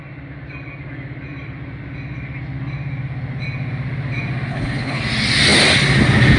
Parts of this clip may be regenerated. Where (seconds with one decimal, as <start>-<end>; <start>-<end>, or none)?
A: 4.5-5.0